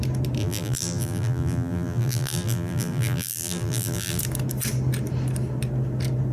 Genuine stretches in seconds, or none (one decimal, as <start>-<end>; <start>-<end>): 0.0-0.4; 4.2-6.3